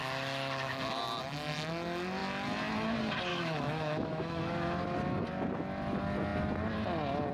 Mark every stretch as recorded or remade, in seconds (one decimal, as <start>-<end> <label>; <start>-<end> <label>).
0.0-3.3 recorded; 3.3-4.4 remade; 4.4-7.3 recorded